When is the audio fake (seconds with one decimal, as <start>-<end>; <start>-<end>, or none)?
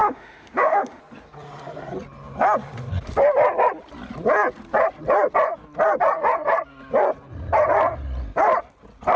0.0-1.0